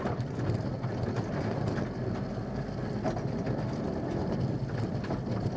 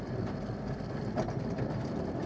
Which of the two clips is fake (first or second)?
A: second